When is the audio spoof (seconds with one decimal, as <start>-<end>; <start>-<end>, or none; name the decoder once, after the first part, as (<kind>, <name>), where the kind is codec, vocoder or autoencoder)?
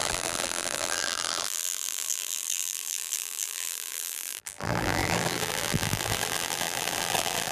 0.0-7.5 (vocoder, BigVGAN v2)